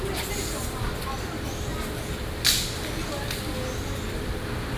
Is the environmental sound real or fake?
real